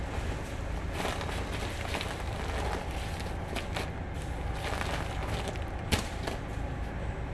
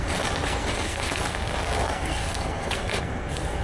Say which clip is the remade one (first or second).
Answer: second